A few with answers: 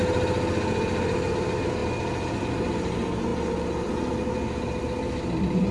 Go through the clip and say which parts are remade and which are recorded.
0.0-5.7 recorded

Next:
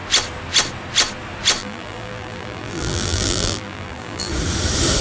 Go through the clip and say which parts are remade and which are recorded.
0.0-1.6 recorded; 1.6-4.3 remade; 4.3-5.0 recorded

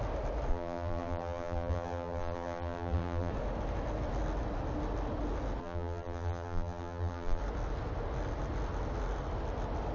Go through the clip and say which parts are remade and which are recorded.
0.0-0.5 recorded; 0.5-3.3 remade; 3.3-5.6 recorded; 5.6-7.4 remade; 7.4-9.9 recorded

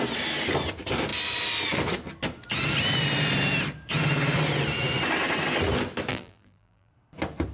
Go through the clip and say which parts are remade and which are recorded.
0.0-6.1 recorded; 6.1-6.9 remade; 6.9-7.5 recorded

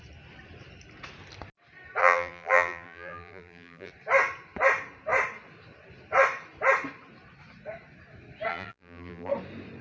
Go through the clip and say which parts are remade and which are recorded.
0.0-2.0 recorded; 2.0-3.9 remade; 3.9-8.5 recorded; 8.5-9.3 remade; 9.3-9.8 recorded

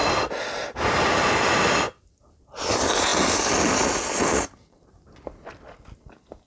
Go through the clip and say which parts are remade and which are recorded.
0.0-0.5 remade; 0.5-6.5 recorded

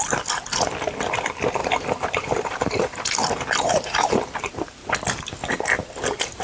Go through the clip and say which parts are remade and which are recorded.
0.0-1.6 recorded; 1.6-4.1 remade; 4.1-6.4 recorded

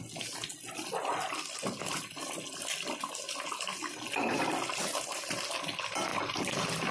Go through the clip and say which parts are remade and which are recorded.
0.0-6.9 recorded